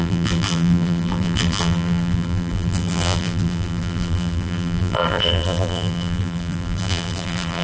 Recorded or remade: remade